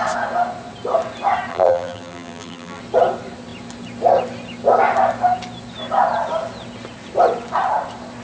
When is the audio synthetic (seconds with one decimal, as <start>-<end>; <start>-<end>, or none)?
1.5-2.8